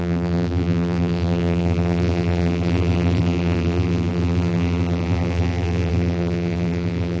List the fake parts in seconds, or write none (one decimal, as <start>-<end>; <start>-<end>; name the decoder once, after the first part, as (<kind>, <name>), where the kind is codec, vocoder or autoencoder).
0.0-7.2 (vocoder, BigVGAN v2)